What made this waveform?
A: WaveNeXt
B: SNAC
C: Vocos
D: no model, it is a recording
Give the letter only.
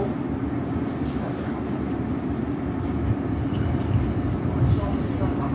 D